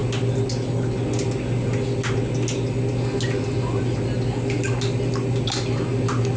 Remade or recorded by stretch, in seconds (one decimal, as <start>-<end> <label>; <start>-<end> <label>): 0.0-6.4 recorded